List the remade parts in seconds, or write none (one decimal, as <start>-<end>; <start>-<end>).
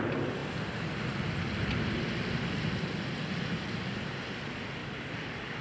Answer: 4.8-5.6